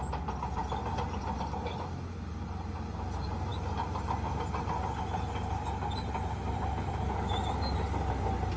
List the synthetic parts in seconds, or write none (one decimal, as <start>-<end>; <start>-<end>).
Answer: none